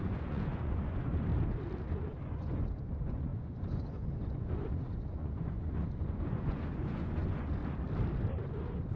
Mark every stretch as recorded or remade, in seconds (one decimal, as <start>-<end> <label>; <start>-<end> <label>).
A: 0.0-1.3 remade; 1.3-1.8 recorded; 1.8-7.6 remade; 7.6-8.4 recorded; 8.4-9.0 remade